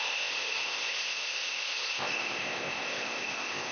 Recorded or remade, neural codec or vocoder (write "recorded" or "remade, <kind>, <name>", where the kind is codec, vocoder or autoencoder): remade, codec, ZipCodec